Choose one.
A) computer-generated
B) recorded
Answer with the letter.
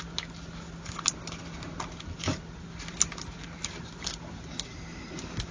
B